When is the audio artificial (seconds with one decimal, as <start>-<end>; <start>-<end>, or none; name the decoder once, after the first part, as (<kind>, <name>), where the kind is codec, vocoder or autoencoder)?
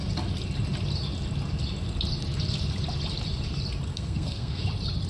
3.9-4.6 (codec, SNAC)